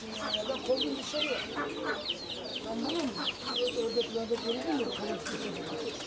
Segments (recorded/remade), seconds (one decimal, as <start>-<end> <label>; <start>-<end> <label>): 0.0-2.5 recorded; 2.5-4.1 remade; 4.1-6.1 recorded